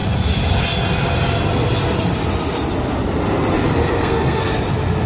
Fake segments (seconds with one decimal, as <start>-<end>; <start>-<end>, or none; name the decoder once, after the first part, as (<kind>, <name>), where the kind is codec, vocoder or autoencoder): 3.8-4.4 (codec, SNAC)

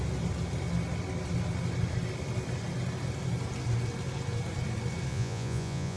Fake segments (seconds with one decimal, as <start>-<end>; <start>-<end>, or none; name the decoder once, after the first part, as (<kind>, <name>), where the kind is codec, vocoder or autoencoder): 5.1-6.0 (vocoder, Vocos)

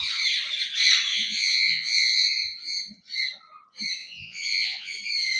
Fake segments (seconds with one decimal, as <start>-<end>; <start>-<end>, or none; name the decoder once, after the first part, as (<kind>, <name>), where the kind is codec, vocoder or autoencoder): 1.1-2.2 (vocoder, Vocos); 4.0-5.0

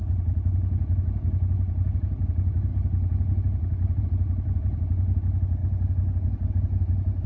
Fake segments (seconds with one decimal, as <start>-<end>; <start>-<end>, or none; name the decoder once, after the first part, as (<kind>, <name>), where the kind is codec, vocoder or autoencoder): none